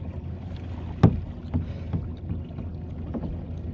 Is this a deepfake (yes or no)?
no